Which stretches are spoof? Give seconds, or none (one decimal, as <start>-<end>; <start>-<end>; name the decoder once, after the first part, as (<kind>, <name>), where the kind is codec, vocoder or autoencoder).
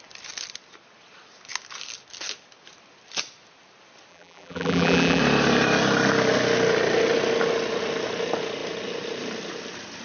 4.1-5.2 (vocoder, BigVGAN v2)